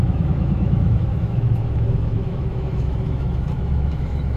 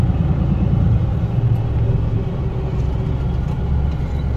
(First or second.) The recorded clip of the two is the second